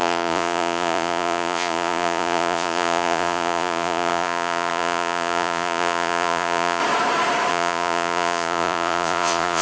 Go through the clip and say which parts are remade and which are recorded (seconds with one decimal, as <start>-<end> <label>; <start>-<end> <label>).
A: 0.0-6.8 remade; 6.8-7.5 recorded; 7.5-9.6 remade